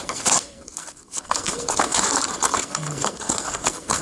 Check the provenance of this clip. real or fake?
fake